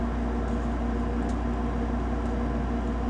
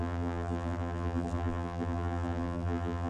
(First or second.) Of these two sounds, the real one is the first